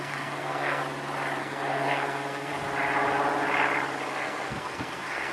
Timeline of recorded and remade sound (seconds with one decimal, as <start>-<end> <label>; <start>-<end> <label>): 0.0-0.8 remade; 0.8-1.4 recorded; 1.4-2.5 remade; 2.5-4.1 recorded; 4.1-5.3 remade